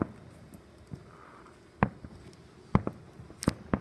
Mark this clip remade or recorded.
recorded